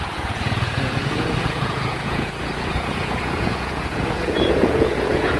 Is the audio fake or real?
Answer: fake